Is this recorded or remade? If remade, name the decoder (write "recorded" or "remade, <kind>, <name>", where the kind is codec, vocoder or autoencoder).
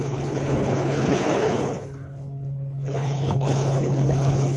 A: remade, codec, HILCodec